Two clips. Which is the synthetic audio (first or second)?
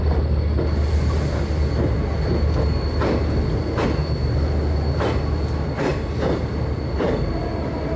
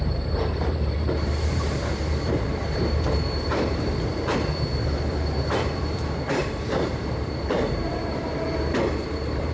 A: second